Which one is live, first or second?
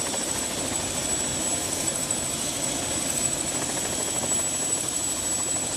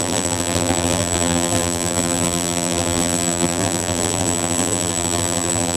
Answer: first